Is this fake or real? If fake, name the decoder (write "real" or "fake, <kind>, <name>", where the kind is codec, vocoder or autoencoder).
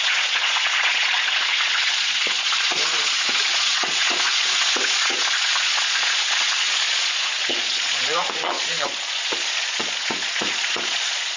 fake, vocoder, Vocos